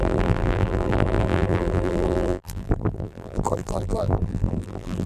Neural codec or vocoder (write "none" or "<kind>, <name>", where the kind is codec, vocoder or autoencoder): vocoder, BigVGAN v2